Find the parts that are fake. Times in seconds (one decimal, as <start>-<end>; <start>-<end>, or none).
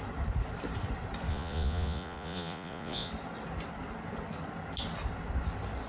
1.3-3.1